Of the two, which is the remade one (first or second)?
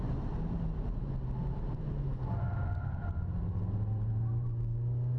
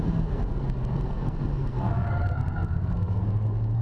second